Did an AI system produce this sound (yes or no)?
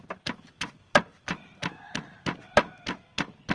no